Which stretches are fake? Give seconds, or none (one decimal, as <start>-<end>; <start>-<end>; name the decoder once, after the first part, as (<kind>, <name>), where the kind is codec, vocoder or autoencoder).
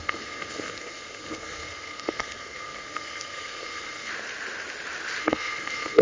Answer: 0.0-4.1 (codec, SNAC); 5.2-6.0